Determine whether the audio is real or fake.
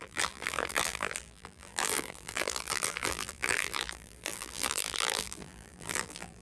fake